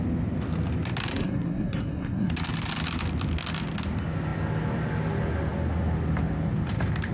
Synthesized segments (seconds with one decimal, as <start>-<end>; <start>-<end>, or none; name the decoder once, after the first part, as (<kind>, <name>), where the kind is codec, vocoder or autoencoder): 1.1-2.3 (codec, SNAC)